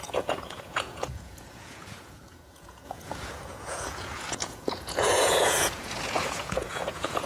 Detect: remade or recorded remade